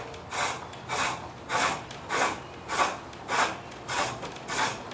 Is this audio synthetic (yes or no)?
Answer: no